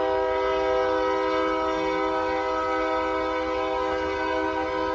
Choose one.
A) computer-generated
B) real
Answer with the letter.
B